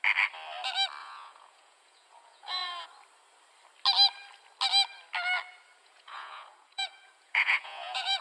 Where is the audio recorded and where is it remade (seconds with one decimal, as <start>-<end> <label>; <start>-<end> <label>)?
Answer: 0.0-1.0 recorded; 1.0-2.8 remade; 2.8-5.8 recorded; 5.8-8.2 remade